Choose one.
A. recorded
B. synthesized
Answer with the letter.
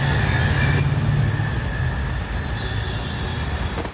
A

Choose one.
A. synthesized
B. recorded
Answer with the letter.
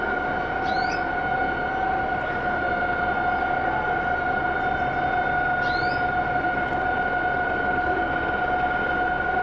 B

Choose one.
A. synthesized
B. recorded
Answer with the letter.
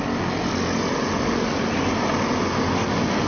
B